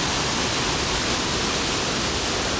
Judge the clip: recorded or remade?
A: recorded